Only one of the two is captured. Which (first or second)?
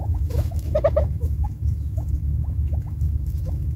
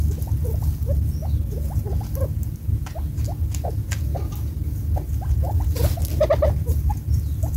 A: second